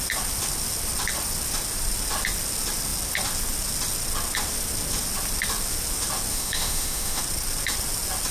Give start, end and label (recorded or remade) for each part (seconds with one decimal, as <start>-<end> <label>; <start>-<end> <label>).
0.0-6.3 recorded; 6.3-7.2 remade; 7.2-8.3 recorded